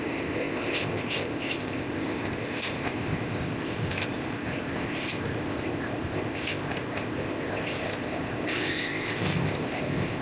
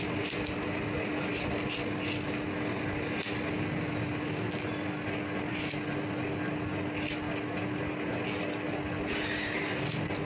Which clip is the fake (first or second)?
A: first